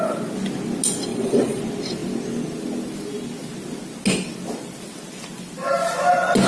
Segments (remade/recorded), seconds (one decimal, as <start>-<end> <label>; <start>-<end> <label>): 0.0-1.1 recorded; 1.1-1.6 remade; 1.6-6.5 recorded